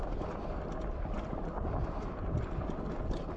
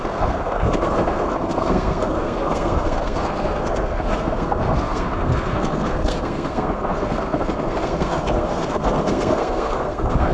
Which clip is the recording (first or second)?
first